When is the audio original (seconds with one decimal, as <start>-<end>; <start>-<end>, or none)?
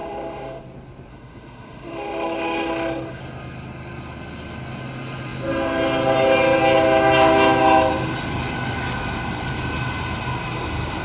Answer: 0.6-1.1; 3.2-11.0